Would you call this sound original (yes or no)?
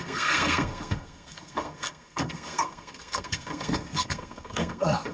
no